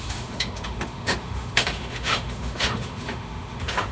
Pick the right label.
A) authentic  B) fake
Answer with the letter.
B